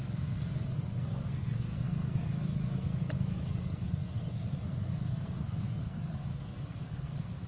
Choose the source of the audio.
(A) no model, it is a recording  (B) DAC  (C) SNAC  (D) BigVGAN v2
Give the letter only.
C